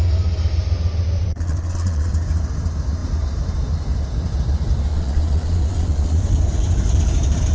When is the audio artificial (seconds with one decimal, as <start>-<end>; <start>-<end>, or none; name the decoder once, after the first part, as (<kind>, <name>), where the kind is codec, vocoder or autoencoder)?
1.3-2.1 (vocoder, Vocos); 4.9-6.2

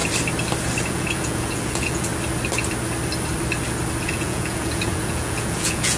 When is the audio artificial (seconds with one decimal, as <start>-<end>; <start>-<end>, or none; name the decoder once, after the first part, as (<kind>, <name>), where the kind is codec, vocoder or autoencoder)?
0.8-2.1 (vocoder, Vocos); 4.0-6.0

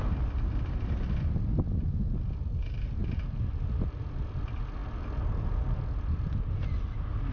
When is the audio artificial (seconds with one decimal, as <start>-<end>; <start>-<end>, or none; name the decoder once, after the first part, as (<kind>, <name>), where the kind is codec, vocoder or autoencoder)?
none

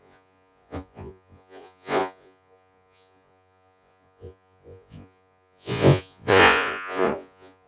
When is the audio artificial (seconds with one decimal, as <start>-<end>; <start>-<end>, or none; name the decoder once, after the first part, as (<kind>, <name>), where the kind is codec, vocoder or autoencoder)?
0.0-7.7 (vocoder, Vocos)

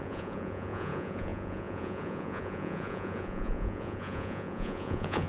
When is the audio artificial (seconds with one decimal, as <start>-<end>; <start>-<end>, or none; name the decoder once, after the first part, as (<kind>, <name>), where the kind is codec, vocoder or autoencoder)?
0.0-5.3 (vocoder, Vocos)

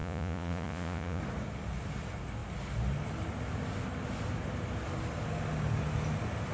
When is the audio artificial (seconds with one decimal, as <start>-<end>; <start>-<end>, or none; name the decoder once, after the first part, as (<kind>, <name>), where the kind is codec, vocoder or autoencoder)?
0.0-1.2 (vocoder, Vocos)

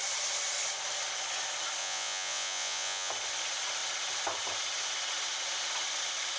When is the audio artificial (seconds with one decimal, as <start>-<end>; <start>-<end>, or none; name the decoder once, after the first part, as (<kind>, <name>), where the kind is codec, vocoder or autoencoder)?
1.8-3.1 (vocoder, Vocos)